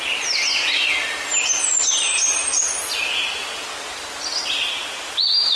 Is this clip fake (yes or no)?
no